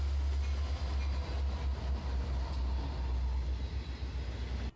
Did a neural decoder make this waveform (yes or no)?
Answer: no